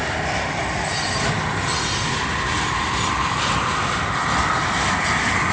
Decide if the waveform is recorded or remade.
recorded